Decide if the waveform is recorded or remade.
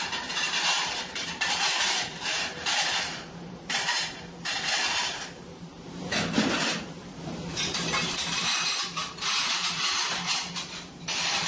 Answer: remade